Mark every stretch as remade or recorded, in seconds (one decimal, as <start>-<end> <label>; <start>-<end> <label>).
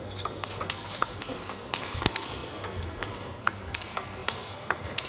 0.0-5.1 remade